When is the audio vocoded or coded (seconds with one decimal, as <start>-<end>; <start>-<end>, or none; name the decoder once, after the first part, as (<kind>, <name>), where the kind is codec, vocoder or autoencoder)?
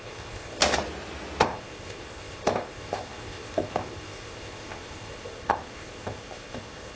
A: 0.0-0.6 (codec, ZipCodec); 1.4-7.0